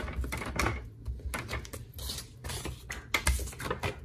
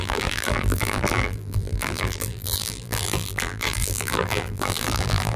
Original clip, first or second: first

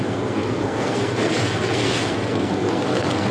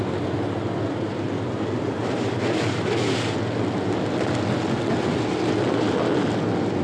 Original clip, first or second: second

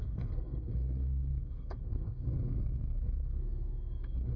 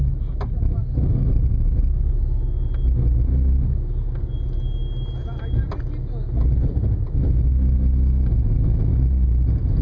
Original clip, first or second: second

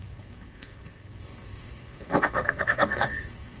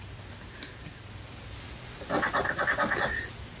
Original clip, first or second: second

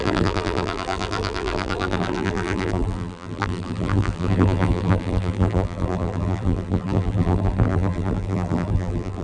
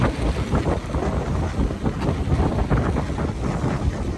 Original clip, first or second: second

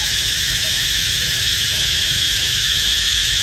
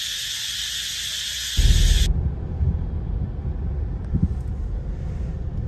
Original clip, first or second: second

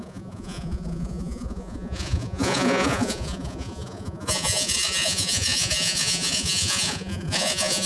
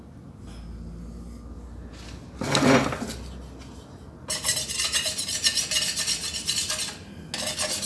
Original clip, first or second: second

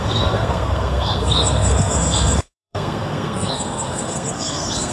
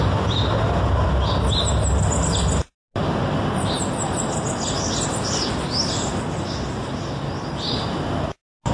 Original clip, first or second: second